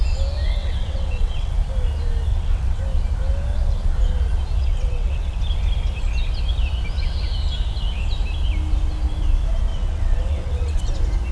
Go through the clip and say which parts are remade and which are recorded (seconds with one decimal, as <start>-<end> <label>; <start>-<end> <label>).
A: 0.0-0.6 recorded; 0.6-1.5 remade; 1.5-2.3 recorded; 2.3-2.8 remade; 2.8-4.6 recorded; 4.6-5.4 remade; 5.4-9.7 recorded; 9.7-10.8 remade; 10.8-11.3 recorded